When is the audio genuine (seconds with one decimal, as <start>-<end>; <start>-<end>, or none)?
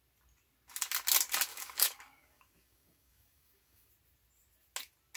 0.0-1.5; 3.9-5.2